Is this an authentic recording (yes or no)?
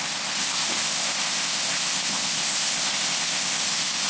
no